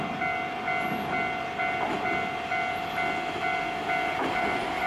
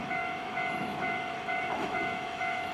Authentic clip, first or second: first